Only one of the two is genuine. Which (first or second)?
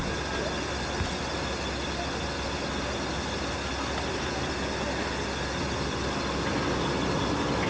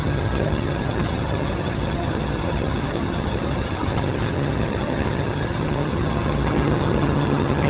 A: first